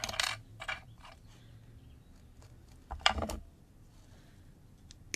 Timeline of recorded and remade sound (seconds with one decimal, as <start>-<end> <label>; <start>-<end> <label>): 0.0-0.5 recorded; 0.5-1.4 remade; 1.4-2.6 recorded; 2.6-3.4 remade; 3.4-5.2 recorded